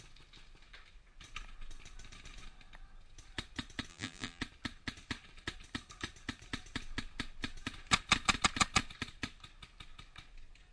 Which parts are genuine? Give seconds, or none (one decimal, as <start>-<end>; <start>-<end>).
0.0-3.9; 4.4-10.7